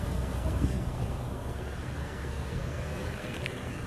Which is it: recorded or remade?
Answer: remade